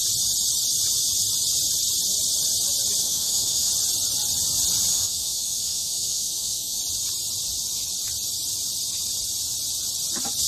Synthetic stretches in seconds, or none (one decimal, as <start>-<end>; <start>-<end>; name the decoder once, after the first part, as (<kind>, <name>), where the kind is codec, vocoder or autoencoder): 3.0-3.7 (autoencoder, DAC-VAE); 4.9-6.8